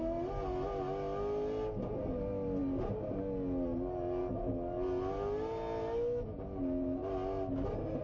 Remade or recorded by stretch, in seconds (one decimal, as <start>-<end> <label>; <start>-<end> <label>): 0.0-8.0 recorded